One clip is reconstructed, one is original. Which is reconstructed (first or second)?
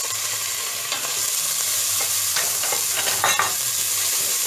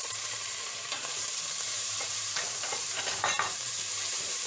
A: second